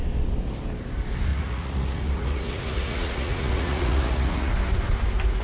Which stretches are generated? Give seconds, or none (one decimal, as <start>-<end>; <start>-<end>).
1.3-4.5